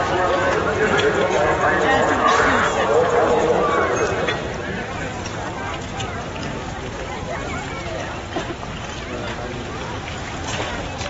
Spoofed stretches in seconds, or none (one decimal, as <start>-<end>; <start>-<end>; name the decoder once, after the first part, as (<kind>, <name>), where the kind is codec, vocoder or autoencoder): 0.4-3.2 (vocoder, Vocos)